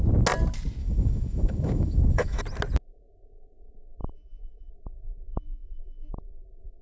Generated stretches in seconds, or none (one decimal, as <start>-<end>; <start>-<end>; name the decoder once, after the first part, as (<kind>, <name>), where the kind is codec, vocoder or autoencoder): 0.8-2.4 (autoencoder, DAC-VAE); 4.0-4.7; 5.3-6.1